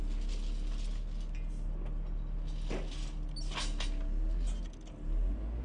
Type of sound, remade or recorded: recorded